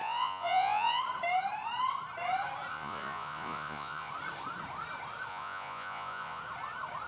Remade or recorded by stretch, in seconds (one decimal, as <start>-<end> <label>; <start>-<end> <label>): 0.0-1.0 remade; 1.0-2.7 recorded; 2.7-4.1 remade; 4.1-5.3 recorded; 5.3-6.4 remade; 6.4-7.1 recorded